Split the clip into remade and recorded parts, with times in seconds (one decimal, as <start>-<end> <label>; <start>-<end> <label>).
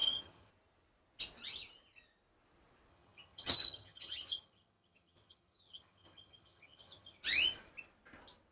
0.0-0.5 remade; 0.5-2.9 recorded; 2.9-7.2 remade; 7.2-8.5 recorded